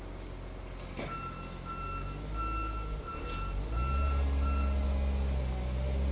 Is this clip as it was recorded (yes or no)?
yes